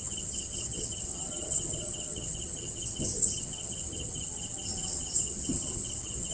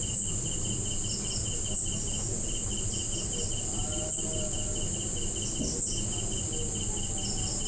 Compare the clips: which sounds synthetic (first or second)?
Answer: first